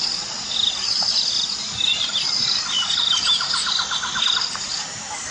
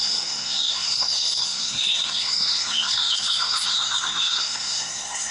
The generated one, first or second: second